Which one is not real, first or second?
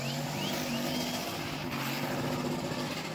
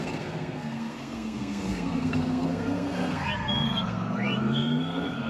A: second